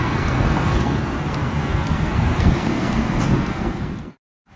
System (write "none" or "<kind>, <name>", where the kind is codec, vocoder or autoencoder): codec, SNAC